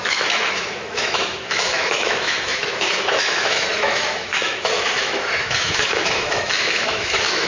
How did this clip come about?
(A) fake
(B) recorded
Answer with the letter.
A